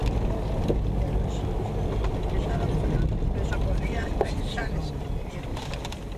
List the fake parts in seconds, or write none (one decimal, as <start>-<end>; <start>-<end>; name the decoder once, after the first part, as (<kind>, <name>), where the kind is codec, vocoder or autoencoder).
4.6-5.3 (vocoder, BigVGAN v2)